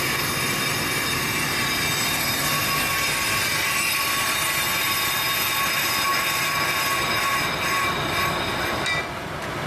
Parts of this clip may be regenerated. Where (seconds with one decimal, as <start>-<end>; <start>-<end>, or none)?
none